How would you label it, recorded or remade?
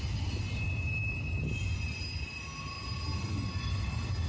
recorded